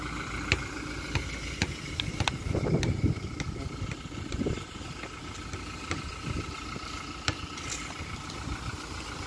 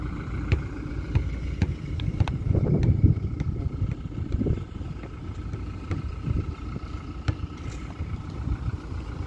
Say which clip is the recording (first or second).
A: first